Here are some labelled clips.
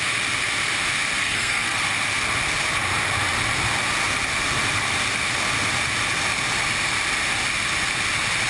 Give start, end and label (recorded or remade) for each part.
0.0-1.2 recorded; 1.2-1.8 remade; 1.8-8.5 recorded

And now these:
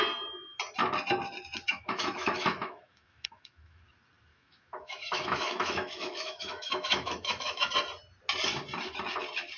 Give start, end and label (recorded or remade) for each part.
0.0-1.7 recorded; 1.7-3.8 remade; 3.8-4.3 recorded; 4.3-7.7 remade; 7.7-9.6 recorded

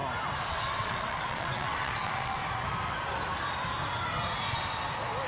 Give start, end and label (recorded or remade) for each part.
0.0-0.5 recorded; 0.5-2.4 remade; 2.4-5.3 recorded

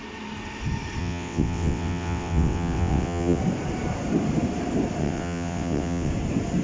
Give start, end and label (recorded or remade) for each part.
0.0-1.0 recorded; 1.0-3.4 remade; 3.4-5.0 recorded; 5.0-6.1 remade; 6.1-6.6 recorded

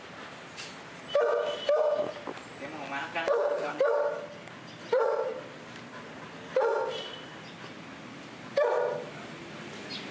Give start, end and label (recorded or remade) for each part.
0.0-3.3 recorded; 3.3-3.8 remade; 3.8-10.1 recorded

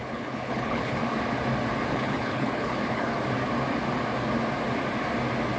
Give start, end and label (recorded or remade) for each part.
0.0-1.0 remade; 1.0-1.9 recorded; 1.9-3.1 remade; 3.1-5.6 recorded

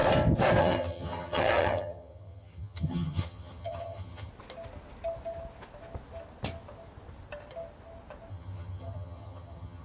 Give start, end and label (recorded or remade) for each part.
0.0-0.6 recorded; 0.6-4.3 remade; 4.3-8.3 recorded; 8.3-9.8 remade